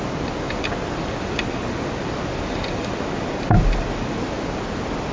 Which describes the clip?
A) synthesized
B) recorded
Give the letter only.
B